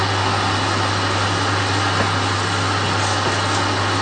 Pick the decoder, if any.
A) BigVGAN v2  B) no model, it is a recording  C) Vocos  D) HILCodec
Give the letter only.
B